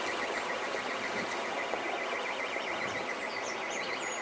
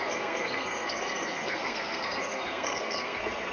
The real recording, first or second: first